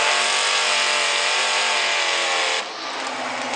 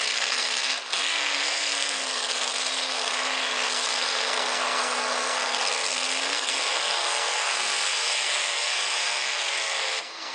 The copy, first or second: second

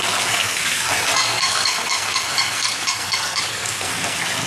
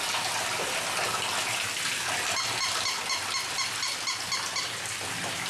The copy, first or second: first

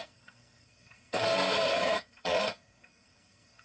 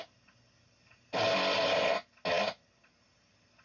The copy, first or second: first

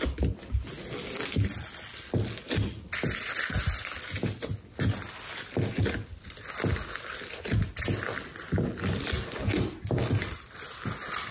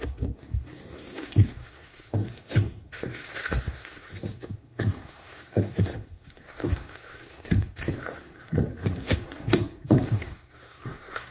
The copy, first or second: second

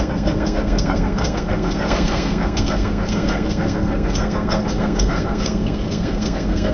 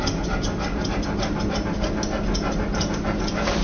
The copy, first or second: first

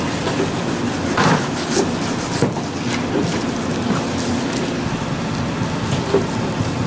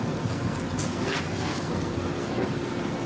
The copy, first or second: second